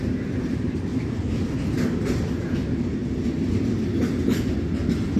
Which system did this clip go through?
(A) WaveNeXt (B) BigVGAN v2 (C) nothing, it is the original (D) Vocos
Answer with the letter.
C